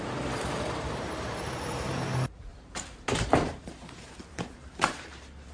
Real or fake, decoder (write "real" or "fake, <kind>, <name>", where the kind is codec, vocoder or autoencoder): fake, vocoder, BigVGAN v2